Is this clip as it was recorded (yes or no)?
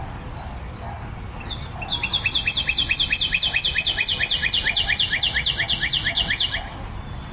yes